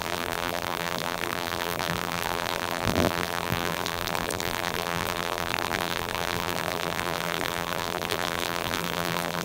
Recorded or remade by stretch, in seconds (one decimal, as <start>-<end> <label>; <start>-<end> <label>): 0.0-9.4 remade